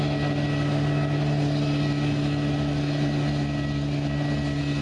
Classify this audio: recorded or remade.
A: recorded